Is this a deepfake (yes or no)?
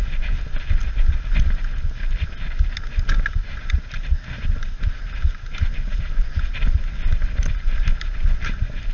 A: no